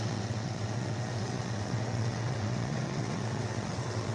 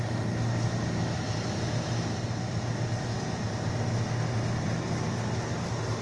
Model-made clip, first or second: first